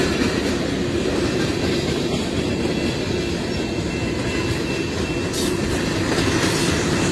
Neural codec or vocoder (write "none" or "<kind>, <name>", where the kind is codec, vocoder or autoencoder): none